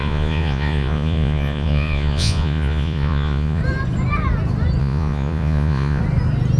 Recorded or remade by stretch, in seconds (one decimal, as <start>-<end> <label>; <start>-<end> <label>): 0.0-3.6 remade; 3.6-4.8 recorded; 4.8-6.0 remade; 6.0-6.6 recorded